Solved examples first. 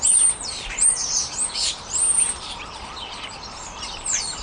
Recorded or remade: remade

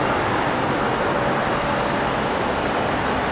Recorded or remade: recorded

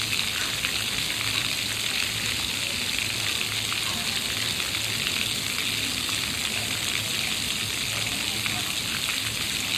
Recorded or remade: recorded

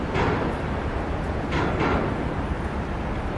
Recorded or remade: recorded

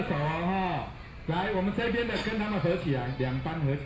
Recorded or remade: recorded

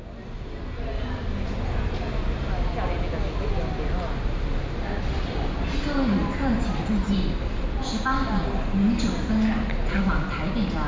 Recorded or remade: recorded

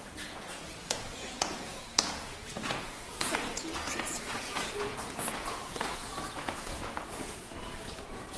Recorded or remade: remade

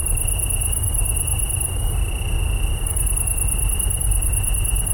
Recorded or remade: recorded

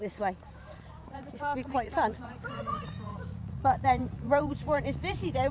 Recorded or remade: remade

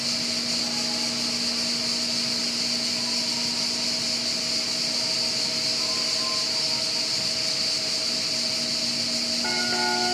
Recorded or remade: recorded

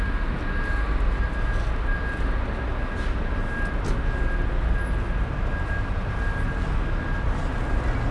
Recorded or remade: recorded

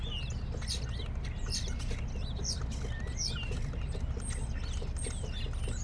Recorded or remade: recorded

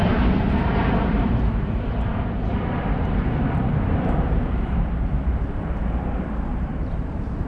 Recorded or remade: remade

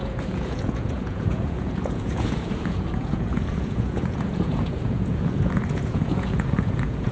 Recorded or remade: remade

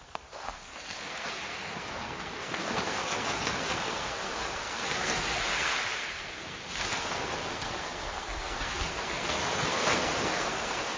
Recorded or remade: remade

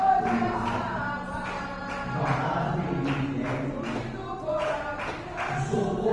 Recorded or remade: recorded